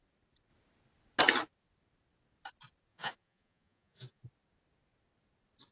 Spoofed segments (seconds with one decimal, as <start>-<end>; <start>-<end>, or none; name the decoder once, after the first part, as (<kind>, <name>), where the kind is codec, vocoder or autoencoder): 2.9-4.2 (vocoder, Vocos)